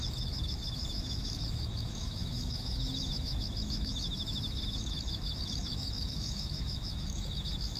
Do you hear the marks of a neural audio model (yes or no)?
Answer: yes